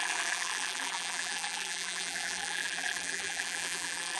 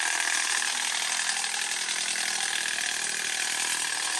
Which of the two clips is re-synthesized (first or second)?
first